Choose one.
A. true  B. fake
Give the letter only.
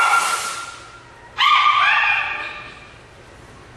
A